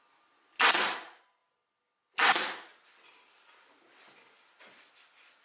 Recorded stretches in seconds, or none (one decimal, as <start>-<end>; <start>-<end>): 0.0-5.4